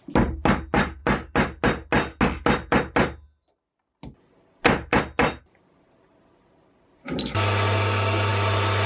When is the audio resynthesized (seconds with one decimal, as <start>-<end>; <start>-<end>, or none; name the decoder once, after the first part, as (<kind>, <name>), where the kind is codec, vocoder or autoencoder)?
none